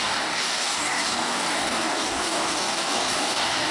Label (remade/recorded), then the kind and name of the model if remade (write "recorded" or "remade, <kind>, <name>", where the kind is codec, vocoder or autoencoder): remade, codec, DAC